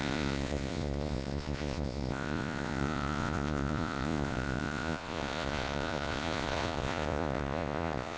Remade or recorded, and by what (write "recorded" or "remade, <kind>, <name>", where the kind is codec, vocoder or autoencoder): remade, vocoder, Vocos